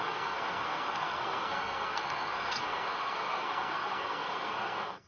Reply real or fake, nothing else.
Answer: fake